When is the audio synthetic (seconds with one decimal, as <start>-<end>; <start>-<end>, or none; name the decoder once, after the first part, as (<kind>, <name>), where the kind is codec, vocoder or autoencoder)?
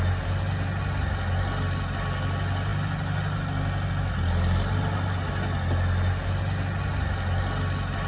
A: none